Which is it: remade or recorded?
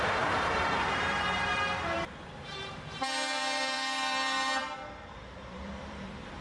remade